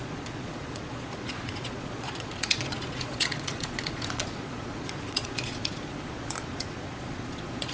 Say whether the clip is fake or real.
fake